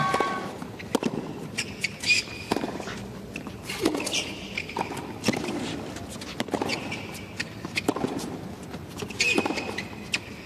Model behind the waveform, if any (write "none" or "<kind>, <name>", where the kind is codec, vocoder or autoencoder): none